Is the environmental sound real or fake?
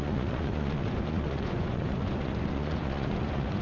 fake